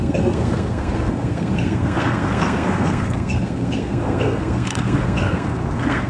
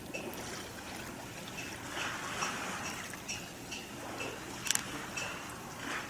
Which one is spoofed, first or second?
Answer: first